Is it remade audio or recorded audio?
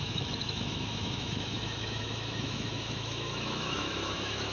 remade